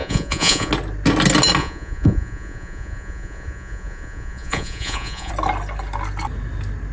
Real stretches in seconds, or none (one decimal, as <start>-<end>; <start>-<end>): 0.7-1.6; 5.3-6.9